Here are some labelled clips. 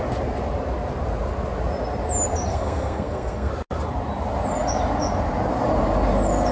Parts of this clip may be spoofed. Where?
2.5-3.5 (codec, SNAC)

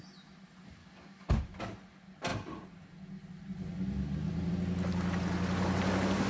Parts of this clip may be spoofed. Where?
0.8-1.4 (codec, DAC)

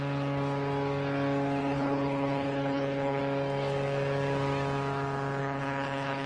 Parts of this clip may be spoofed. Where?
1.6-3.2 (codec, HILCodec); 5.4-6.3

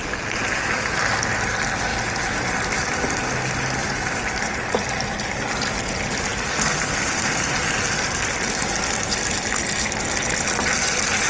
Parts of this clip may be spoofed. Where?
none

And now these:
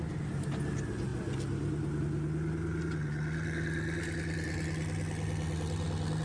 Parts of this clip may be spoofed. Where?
none

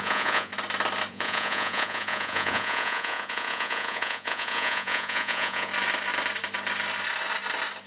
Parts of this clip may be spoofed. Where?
0.0-0.5 (vocoder, Vocos); 1.1-5.7

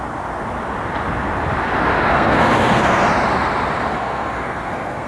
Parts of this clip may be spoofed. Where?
2.1-3.1 (codec, SNAC); 4.0-5.1